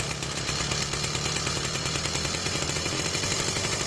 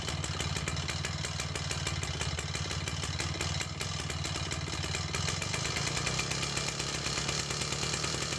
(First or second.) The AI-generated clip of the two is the first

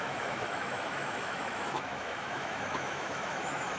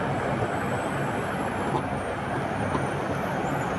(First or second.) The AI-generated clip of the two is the first